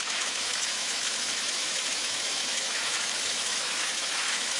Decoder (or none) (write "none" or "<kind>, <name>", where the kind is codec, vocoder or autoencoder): autoencoder, DAC-VAE